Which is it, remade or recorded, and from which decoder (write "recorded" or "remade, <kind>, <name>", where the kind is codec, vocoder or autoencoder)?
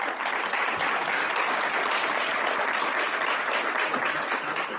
recorded